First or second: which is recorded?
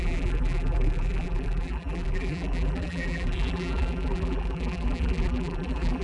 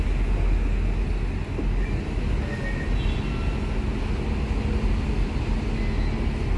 second